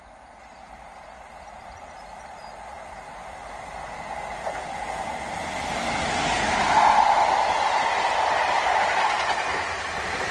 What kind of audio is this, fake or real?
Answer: real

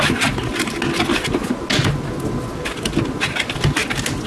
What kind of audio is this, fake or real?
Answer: real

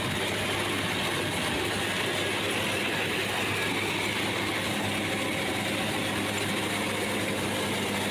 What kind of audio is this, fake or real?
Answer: real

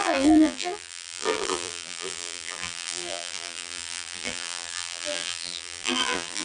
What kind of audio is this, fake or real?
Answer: fake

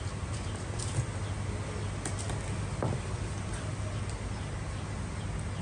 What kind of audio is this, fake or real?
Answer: real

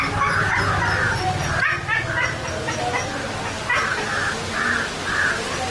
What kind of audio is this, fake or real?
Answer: real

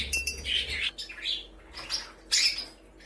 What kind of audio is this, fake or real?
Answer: real